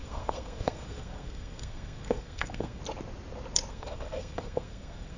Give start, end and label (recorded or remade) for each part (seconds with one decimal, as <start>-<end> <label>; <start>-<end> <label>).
0.0-2.8 remade; 2.8-3.7 recorded; 3.7-5.2 remade